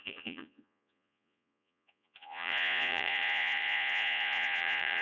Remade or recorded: remade